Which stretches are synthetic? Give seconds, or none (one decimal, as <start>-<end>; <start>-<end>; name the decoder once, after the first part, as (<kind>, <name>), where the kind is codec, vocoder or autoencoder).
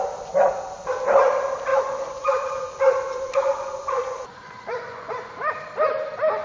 1.7-5.3 (vocoder, Vocos)